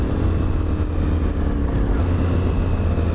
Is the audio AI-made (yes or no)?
no